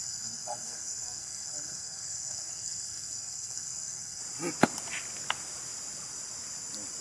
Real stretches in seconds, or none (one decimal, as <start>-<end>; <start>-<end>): 4.2-7.0